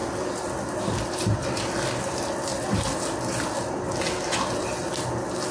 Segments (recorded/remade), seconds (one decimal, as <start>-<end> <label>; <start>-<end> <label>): 0.0-1.1 remade; 1.1-5.5 recorded